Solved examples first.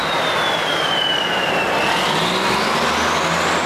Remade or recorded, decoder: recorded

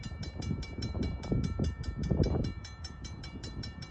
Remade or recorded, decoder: remade, vocoder, BigVGAN v2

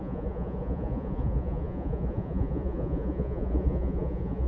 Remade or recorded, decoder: remade, vocoder, Vocos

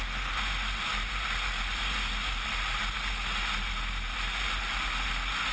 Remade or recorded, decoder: recorded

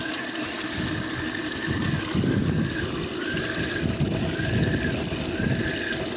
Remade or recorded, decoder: recorded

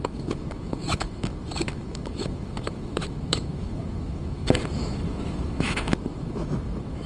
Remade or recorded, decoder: remade, autoencoder, DAC-VAE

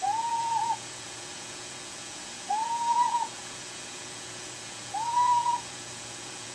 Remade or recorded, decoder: remade, vocoder, Vocos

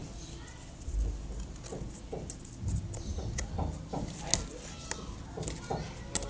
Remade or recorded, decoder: recorded